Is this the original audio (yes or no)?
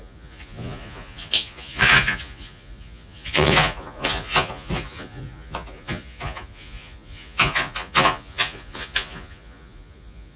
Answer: no